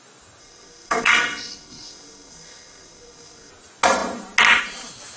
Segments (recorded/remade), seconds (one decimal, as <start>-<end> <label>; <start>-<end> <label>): 0.0-0.4 recorded; 0.4-3.5 remade; 3.5-5.2 recorded